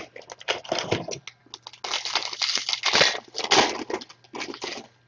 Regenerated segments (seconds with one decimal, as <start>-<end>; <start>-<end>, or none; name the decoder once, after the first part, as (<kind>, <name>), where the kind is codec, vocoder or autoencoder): none

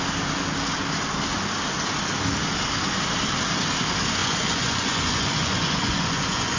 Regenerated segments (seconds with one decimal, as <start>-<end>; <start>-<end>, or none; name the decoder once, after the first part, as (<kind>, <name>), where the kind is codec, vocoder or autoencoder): 4.2-6.6 (vocoder, Vocos)